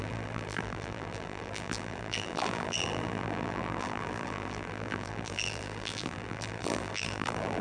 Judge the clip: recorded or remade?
remade